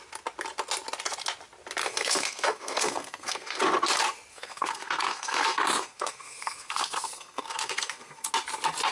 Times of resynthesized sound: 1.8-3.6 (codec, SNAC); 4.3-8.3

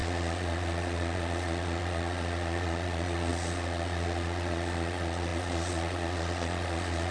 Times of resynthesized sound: 0.0-7.1 (vocoder, Vocos)

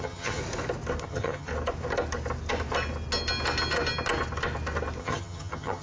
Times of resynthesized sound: 0.0-0.4 (vocoder, HiFi-GAN); 1.0-1.5; 5.0-5.8

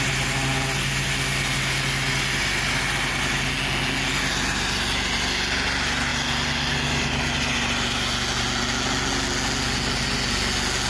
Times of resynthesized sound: none

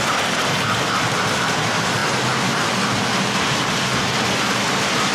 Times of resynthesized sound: none

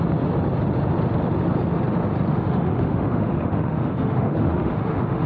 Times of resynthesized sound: 2.3-5.3 (autoencoder, DAC-VAE)

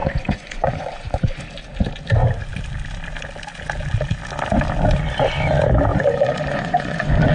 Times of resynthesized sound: 0.0-1.4 (vocoder, Vocos); 5.9-7.3